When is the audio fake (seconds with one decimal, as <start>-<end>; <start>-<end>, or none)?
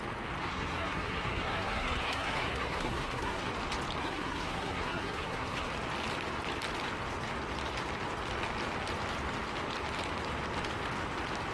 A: 0.5-3.5; 4.0-5.7